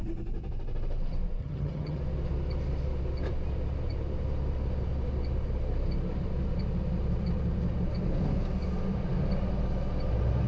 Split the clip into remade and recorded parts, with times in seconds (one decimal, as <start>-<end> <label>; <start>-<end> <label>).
0.0-1.4 recorded; 1.4-2.0 remade; 2.0-10.5 recorded